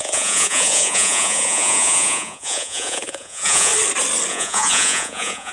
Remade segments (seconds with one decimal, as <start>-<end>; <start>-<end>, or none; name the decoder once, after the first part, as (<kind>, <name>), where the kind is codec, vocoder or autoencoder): 0.0-3.7 (vocoder, Vocos); 4.3-5.5